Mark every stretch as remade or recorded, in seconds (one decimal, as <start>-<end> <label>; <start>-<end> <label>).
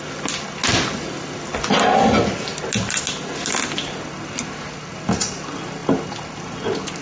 0.0-7.0 recorded